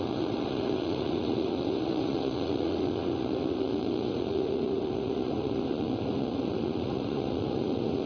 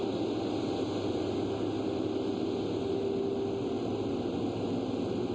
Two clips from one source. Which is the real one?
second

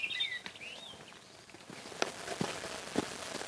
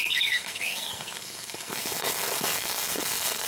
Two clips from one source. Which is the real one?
first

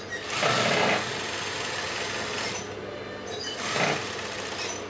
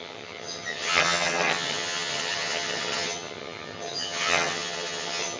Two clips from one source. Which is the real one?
first